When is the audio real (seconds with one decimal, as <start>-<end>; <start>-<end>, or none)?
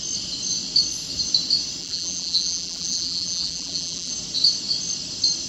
0.0-1.8; 4.1-5.5